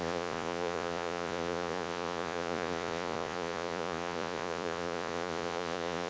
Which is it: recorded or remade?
remade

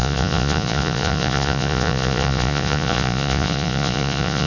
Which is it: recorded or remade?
remade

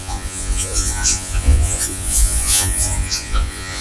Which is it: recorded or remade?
remade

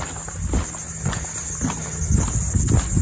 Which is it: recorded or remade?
recorded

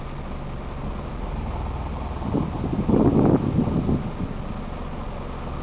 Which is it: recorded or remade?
recorded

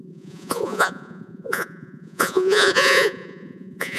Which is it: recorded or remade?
remade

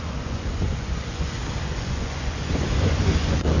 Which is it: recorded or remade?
remade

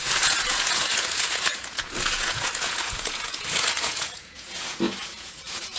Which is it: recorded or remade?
remade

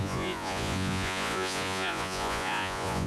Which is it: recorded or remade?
remade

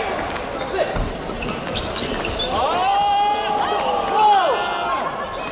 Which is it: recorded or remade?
recorded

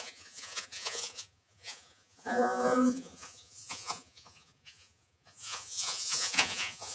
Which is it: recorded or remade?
remade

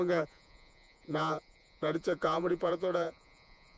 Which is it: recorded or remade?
remade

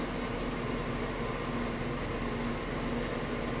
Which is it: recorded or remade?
recorded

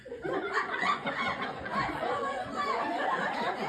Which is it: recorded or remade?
remade